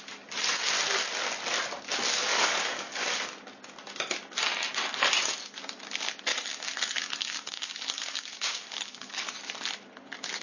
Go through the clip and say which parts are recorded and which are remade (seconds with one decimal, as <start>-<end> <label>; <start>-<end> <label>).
0.0-2.3 recorded; 2.3-3.0 remade; 3.0-6.3 recorded; 6.3-9.5 remade; 9.5-10.4 recorded